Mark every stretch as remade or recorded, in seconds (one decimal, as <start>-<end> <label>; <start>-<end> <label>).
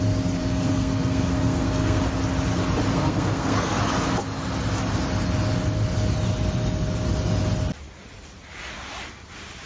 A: 0.0-0.4 recorded; 0.4-2.0 remade; 2.0-2.9 recorded; 2.9-3.8 remade; 3.8-9.7 recorded